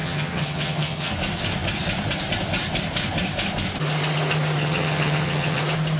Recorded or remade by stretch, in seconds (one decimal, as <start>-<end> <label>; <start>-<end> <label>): 0.0-1.1 remade; 1.1-4.6 recorded; 4.6-5.6 remade; 5.6-6.0 recorded